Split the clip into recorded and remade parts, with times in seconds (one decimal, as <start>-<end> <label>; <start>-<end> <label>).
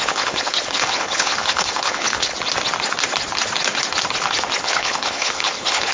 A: 0.0-2.3 remade; 2.3-4.6 recorded; 4.6-5.9 remade